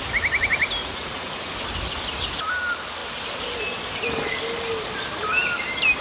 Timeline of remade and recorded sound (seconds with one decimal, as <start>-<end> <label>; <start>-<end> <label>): 0.0-0.8 recorded; 0.8-1.5 remade; 1.5-6.0 recorded